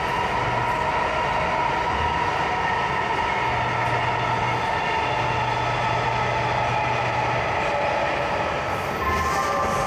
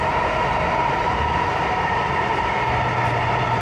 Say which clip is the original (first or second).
first